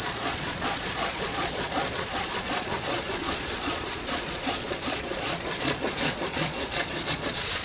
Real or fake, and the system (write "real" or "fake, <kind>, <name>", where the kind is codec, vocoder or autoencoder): fake, vocoder, Vocos